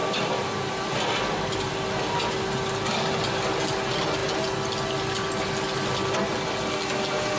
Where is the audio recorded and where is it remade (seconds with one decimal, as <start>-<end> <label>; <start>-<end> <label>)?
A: 0.0-1.7 remade; 1.7-7.4 recorded